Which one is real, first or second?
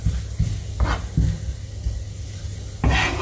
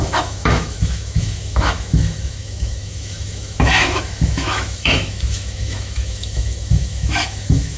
first